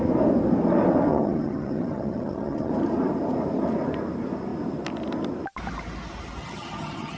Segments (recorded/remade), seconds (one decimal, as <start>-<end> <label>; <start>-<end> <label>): 0.0-1.1 recorded; 1.1-2.7 remade; 2.7-6.4 recorded; 6.4-7.2 remade